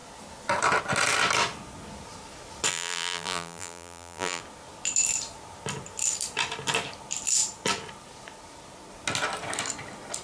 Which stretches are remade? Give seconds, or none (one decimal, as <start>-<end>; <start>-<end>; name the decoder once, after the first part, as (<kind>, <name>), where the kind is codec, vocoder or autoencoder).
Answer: 2.7-4.4 (vocoder, BigVGAN v2)